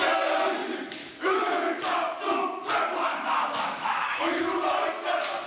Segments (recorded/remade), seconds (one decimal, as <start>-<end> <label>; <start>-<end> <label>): 0.0-1.0 recorded; 1.0-1.8 remade; 1.8-3.1 recorded; 3.1-4.6 remade; 4.6-5.5 recorded